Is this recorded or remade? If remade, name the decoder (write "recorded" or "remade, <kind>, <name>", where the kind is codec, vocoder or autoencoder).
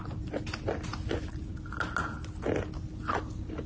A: recorded